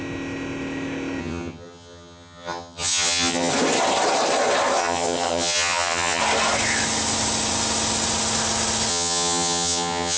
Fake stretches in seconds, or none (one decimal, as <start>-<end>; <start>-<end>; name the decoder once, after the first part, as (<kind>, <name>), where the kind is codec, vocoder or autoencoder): 1.2-3.5 (vocoder, HiFi-GAN); 4.8-6.2; 8.9-10.2